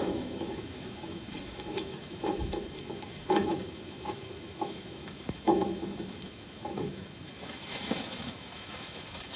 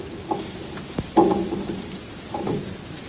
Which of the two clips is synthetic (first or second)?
first